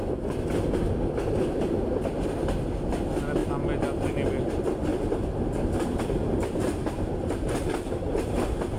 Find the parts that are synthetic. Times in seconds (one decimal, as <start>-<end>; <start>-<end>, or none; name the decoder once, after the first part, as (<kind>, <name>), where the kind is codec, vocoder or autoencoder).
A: 4.9-8.8 (vocoder, BigVGAN v2)

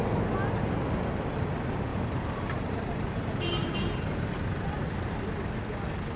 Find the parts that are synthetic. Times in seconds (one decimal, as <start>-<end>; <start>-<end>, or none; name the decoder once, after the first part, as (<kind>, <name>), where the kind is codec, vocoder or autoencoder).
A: 1.9-4.8 (vocoder, BigVGAN v2)

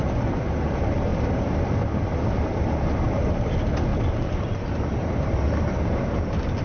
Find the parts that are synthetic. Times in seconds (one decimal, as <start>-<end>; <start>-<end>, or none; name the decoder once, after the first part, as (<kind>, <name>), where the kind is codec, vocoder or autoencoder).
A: 1.1-1.7 (vocoder, BigVGAN v2); 3.9-5.4

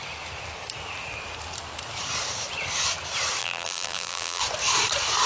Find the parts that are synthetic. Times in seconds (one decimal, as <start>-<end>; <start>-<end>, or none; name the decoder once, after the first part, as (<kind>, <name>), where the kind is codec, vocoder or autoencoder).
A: 3.4-4.4 (vocoder, BigVGAN v2)